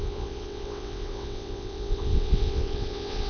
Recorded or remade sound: remade